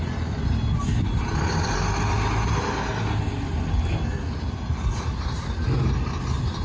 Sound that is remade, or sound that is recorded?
recorded